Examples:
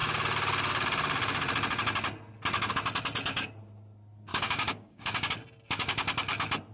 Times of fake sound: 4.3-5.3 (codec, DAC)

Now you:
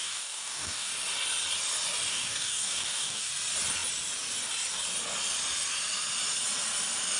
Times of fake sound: 0.0-0.9 (codec, DAC); 2.1-3.3

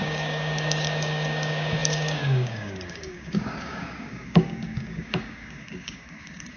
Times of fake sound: 0.0-6.6 (codec, DAC)

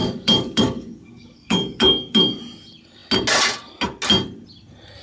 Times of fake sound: 0.0-2.4 (codec, DAC)

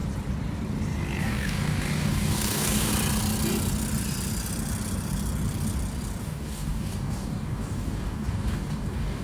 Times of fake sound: 1.2-2.9 (codec, DAC); 6.2-9.2